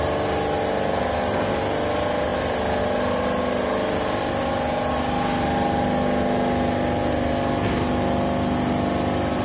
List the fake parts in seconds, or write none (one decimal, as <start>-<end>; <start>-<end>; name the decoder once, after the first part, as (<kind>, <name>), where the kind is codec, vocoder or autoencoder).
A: none